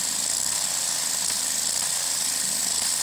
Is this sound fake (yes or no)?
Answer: no